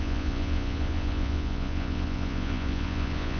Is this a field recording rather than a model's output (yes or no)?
no